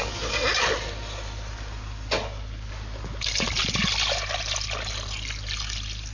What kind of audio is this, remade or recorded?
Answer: recorded